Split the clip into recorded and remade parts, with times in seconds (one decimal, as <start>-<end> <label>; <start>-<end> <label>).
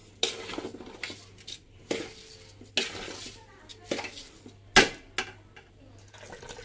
0.0-6.6 recorded